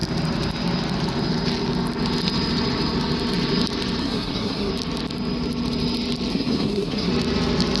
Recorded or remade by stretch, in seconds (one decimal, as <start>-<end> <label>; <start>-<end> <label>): 0.0-4.0 recorded; 4.0-4.7 remade; 4.7-6.3 recorded; 6.3-7.1 remade; 7.1-7.8 recorded